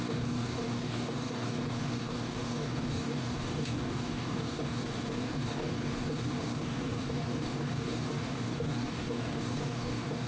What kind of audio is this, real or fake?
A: fake